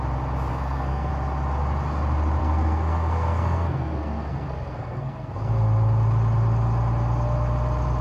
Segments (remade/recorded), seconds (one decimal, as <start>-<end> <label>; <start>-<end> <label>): 0.0-0.5 recorded; 0.5-1.1 remade; 1.1-2.4 recorded; 2.4-5.5 remade; 5.5-8.0 recorded